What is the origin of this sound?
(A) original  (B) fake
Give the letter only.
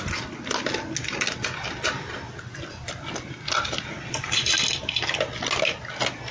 A